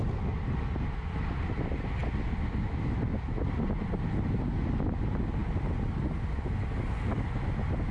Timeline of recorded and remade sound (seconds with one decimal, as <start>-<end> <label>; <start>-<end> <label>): 0.0-7.9 recorded

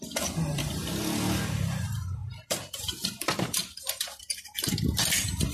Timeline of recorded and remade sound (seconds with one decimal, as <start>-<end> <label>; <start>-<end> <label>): 0.0-0.8 remade; 0.8-1.7 recorded; 1.7-5.5 remade

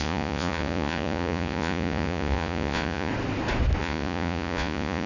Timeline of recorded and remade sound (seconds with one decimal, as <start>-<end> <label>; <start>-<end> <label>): 0.0-3.1 remade; 3.1-3.8 recorded; 3.8-5.1 remade

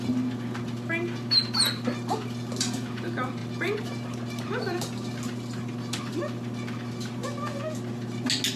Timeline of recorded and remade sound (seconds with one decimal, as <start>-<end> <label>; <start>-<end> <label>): 0.0-8.6 recorded

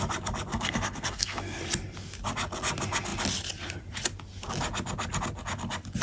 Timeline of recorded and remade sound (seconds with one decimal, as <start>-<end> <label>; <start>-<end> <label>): 0.0-0.5 recorded; 0.5-1.6 remade; 1.6-6.0 recorded

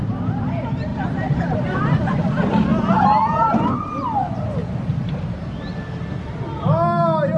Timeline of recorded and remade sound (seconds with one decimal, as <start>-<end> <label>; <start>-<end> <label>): 0.0-0.9 recorded; 0.9-2.0 remade; 2.0-4.6 recorded; 4.6-5.6 remade; 5.6-7.4 recorded

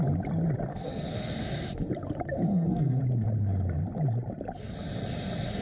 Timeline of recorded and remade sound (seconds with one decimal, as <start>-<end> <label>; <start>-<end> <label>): 0.0-0.7 recorded; 0.7-1.3 remade; 1.3-2.5 recorded; 2.5-3.0 remade; 3.0-5.6 recorded

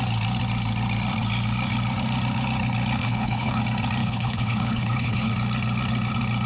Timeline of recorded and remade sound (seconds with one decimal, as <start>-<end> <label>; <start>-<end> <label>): 0.0-3.0 recorded; 3.0-3.6 remade; 3.6-4.0 recorded; 4.0-5.3 remade; 5.3-6.5 recorded